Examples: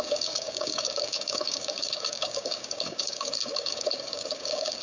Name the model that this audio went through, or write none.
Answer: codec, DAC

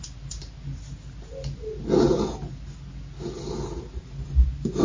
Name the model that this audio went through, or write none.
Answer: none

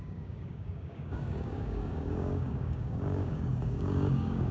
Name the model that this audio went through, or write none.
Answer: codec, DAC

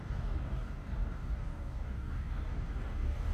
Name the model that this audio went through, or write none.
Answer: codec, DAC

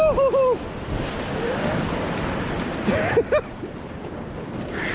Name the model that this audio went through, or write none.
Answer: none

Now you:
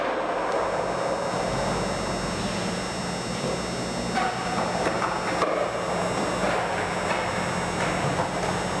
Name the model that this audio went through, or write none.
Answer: none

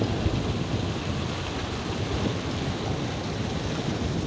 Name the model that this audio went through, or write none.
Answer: none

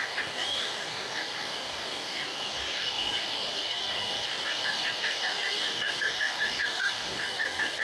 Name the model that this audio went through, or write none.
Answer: codec, DAC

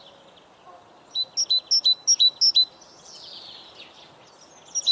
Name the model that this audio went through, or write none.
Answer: none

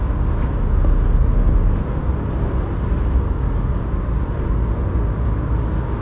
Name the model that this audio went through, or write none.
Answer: none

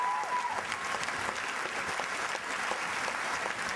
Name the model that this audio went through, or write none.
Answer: none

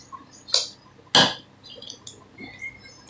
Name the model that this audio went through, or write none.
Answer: none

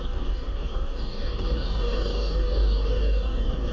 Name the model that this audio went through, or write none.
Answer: codec, DAC